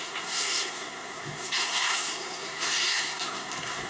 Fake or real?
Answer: fake